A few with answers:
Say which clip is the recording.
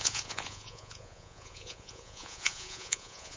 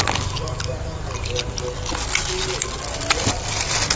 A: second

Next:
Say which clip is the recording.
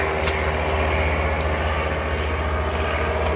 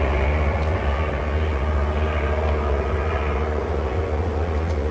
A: first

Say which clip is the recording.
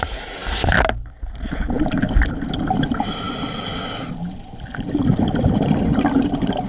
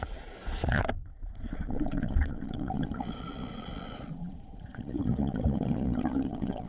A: first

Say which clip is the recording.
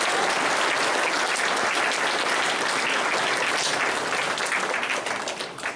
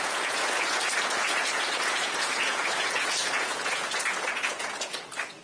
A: first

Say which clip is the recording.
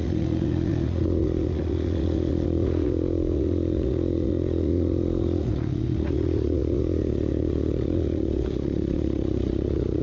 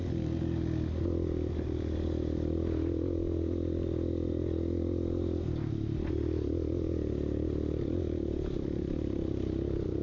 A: second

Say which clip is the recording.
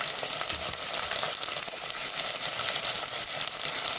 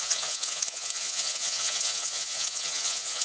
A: first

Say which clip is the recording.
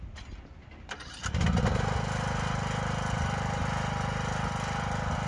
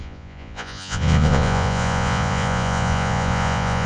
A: first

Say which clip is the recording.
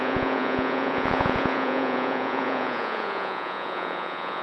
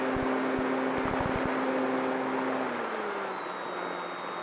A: second